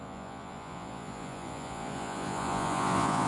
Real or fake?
fake